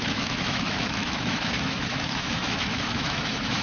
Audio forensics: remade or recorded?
remade